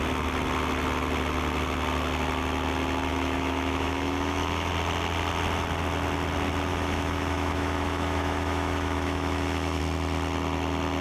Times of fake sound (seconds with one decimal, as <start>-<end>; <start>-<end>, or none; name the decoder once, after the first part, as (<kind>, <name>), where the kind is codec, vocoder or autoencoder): 3.1-4.7 (autoencoder, DAC-VAE); 6.7-9.8